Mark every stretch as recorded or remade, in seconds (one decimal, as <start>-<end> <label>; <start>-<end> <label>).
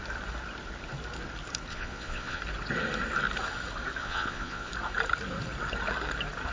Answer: 0.0-1.7 recorded; 1.7-2.4 remade; 2.4-4.0 recorded; 4.0-4.7 remade; 4.7-6.5 recorded